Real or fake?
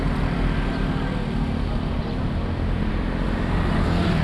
real